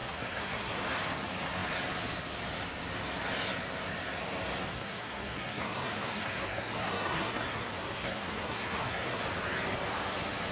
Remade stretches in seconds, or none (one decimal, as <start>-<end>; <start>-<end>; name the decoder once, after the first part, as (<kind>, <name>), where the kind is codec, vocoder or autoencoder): 0.0-0.8 (codec, SNAC); 4.7-9.2